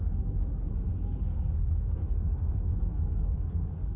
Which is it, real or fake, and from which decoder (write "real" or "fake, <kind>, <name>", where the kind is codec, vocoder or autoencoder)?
fake, codec, SNAC